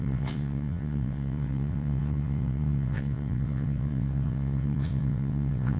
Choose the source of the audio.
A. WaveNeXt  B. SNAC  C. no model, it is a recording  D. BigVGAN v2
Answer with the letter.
A